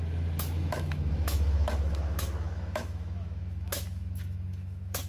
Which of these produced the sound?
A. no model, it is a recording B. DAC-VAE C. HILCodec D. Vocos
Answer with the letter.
B